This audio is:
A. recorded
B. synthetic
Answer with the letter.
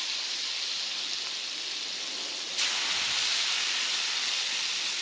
A